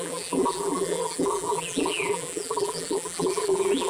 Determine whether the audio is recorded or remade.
remade